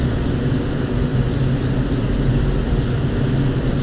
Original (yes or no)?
yes